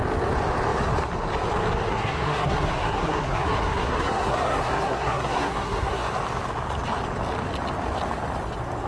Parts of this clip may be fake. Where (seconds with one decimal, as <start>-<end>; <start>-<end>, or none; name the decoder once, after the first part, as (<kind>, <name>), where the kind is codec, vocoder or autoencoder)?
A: 1.9-6.1 (codec, SNAC)